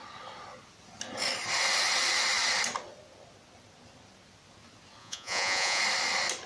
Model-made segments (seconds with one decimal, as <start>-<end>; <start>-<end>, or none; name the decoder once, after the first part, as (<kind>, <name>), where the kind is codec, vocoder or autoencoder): 5.0-5.8 (vocoder, Vocos)